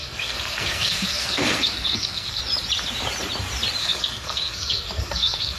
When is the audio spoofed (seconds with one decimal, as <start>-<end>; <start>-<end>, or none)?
0.0-2.4; 3.8-5.6